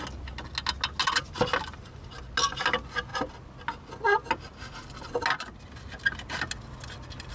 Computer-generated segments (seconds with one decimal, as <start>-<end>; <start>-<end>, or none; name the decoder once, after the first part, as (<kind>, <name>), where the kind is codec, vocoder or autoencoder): none